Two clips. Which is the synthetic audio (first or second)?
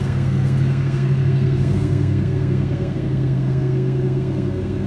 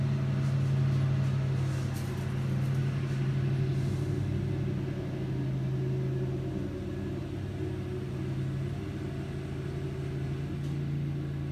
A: first